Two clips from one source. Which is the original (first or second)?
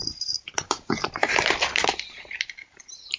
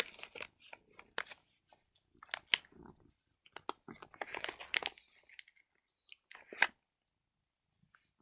second